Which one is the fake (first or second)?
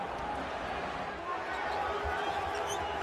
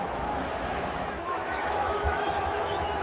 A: second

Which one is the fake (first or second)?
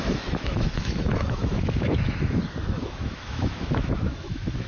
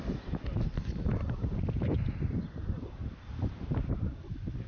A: first